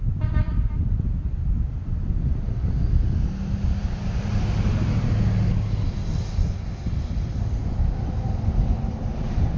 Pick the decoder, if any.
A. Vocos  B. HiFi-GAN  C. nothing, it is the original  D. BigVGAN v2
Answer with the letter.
C